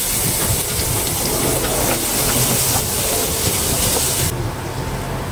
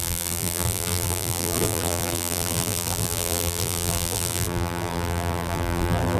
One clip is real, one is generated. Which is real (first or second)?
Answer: first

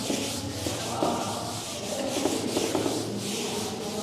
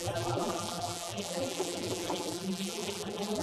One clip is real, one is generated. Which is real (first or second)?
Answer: first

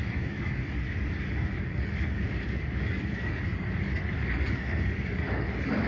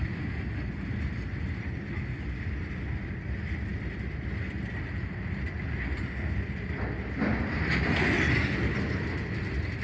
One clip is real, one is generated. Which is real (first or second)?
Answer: second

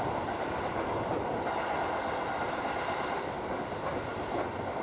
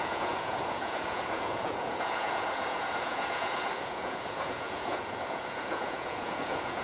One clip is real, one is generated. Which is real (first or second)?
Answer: first